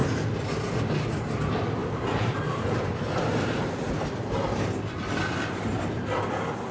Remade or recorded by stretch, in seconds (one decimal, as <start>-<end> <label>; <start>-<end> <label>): 0.0-1.8 recorded; 1.8-3.9 remade; 3.9-6.7 recorded